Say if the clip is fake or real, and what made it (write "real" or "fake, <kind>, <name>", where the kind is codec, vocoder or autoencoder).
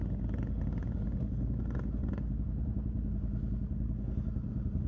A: real